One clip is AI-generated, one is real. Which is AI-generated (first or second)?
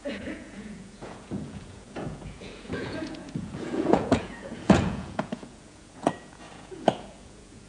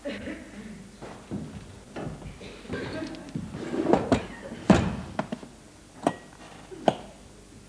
first